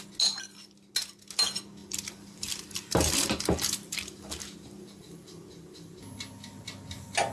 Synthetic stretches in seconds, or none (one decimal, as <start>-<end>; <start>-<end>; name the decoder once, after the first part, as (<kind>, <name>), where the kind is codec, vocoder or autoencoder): 1.8-6.0 (vocoder, BigVGAN v2)